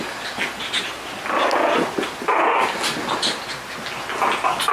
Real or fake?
real